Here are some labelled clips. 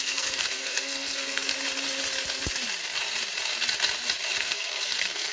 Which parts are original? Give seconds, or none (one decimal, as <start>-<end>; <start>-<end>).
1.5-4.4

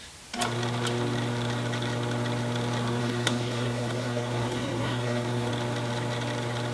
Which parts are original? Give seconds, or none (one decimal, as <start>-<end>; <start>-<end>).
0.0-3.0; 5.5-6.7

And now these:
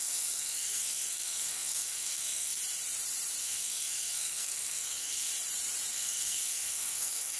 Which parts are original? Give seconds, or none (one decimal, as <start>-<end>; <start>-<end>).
2.6-3.4; 5.3-5.9